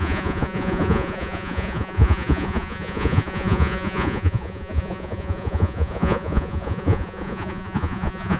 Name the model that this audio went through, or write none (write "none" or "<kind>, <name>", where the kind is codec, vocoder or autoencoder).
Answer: vocoder, Vocos